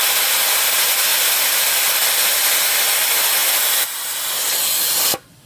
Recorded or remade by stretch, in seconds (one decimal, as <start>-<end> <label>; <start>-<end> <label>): 0.0-5.5 recorded